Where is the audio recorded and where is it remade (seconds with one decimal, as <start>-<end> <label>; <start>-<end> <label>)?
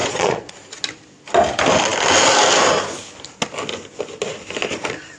0.0-0.5 remade; 0.5-5.2 recorded